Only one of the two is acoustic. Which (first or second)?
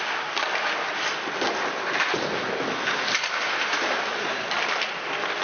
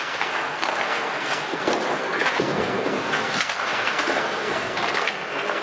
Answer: first